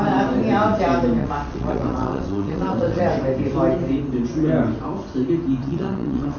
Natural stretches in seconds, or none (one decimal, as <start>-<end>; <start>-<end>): 0.0-1.2; 3.0-5.6